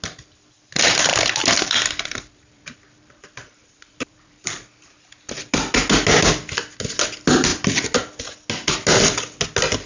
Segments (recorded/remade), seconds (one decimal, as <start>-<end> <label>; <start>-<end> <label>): 0.0-1.1 recorded; 1.1-5.5 remade; 5.5-9.9 recorded